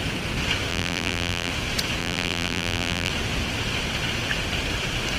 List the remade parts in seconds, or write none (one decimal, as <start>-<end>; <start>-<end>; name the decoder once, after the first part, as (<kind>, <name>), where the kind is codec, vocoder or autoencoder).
0.7-1.5 (vocoder, BigVGAN v2); 2.0-3.1